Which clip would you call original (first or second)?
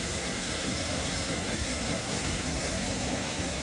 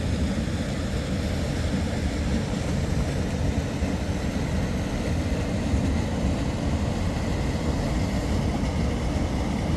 second